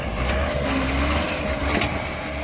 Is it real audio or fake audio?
real